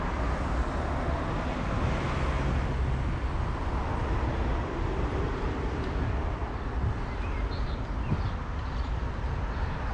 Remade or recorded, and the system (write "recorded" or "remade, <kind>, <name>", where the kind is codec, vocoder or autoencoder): recorded